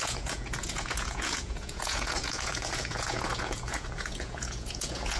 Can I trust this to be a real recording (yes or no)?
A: no